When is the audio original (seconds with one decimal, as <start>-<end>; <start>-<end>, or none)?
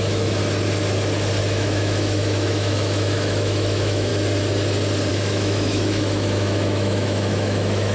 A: 0.4-1.4; 4.1-5.1